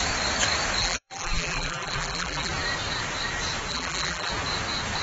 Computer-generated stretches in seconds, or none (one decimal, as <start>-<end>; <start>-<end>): 0.8-2.5; 3.7-4.3